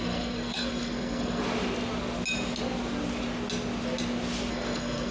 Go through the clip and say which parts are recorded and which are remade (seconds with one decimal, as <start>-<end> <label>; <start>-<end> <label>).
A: 0.0-1.4 remade; 1.4-4.5 recorded; 4.5-5.1 remade